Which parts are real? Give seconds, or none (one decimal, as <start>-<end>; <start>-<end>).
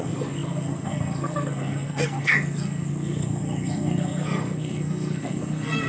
none